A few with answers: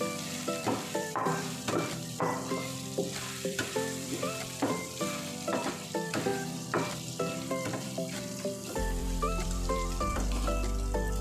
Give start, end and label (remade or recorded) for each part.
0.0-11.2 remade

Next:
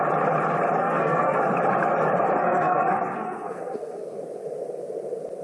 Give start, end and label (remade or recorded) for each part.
0.0-0.8 recorded; 0.8-1.4 remade; 1.4-2.4 recorded; 2.4-4.2 remade; 4.2-5.4 recorded

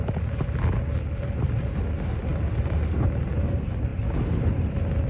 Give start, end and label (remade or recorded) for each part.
0.0-5.1 recorded

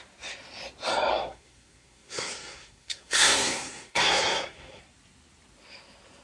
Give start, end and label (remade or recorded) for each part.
0.0-1.1 recorded; 1.1-4.8 remade; 4.8-6.2 recorded